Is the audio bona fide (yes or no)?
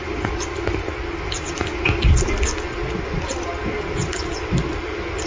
yes